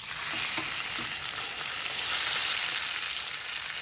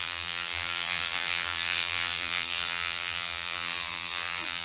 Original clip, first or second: first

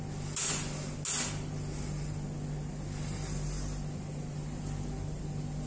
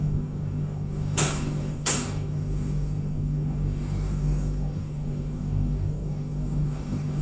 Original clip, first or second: first